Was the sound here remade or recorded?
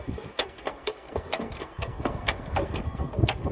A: remade